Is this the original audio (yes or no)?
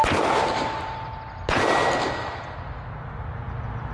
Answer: yes